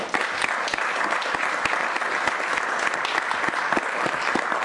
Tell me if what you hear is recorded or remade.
recorded